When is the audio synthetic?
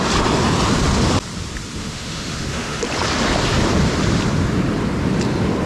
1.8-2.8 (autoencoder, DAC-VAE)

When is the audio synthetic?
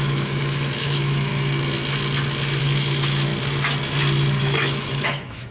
0.0-1.3 (autoencoder, DAC-VAE); 2.6-3.3; 4.4-5.5